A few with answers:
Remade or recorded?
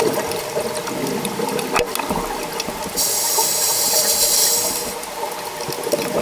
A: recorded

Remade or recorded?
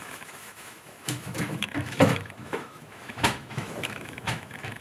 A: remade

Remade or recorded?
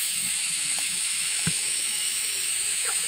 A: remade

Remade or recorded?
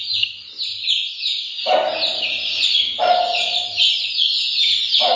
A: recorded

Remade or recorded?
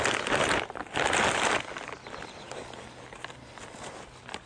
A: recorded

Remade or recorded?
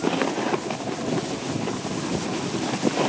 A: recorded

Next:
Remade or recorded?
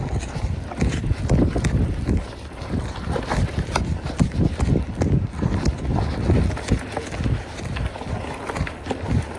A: recorded